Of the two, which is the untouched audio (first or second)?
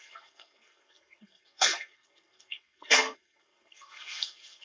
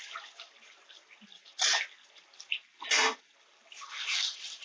second